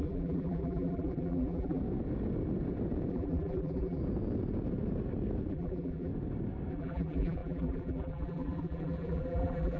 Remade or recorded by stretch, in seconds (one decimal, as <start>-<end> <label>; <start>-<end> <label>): 0.0-1.8 remade; 1.8-3.1 recorded; 3.1-4.0 remade; 4.0-5.5 recorded; 5.5-6.1 remade; 6.1-6.7 recorded; 6.7-9.8 remade